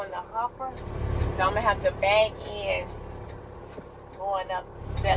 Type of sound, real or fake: real